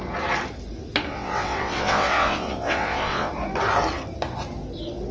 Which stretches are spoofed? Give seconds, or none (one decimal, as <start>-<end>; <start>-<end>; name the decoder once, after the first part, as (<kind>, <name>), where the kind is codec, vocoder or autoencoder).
1.1-3.3 (vocoder, WaveNeXt)